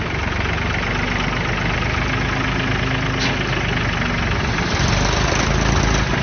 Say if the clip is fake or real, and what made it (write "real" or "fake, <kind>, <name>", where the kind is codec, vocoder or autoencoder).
real